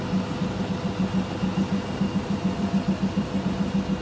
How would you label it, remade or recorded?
recorded